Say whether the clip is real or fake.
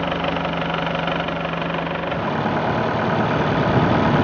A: real